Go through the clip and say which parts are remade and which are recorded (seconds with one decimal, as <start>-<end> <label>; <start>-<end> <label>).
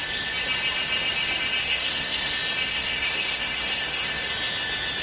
0.0-1.6 recorded; 1.6-2.3 remade; 2.3-2.7 recorded; 2.7-4.3 remade; 4.3-5.0 recorded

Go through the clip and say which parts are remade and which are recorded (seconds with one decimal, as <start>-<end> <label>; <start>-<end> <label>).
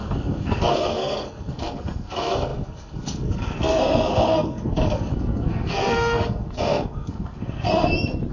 0.0-7.7 remade; 7.7-8.3 recorded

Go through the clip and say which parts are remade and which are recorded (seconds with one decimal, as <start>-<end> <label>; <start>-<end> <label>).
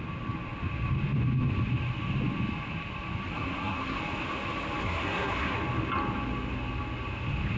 0.0-3.3 recorded; 3.3-4.0 remade; 4.0-4.8 recorded; 4.8-5.6 remade; 5.6-7.6 recorded